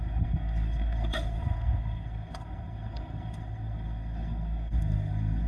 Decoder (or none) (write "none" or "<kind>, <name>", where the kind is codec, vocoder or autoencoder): codec, SNAC